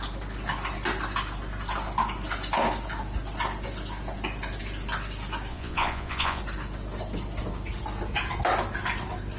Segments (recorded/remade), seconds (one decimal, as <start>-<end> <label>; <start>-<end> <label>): 0.0-5.5 recorded; 5.5-6.4 remade; 6.4-9.4 recorded